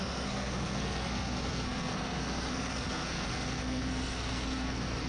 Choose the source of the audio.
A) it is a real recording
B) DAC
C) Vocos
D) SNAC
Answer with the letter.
D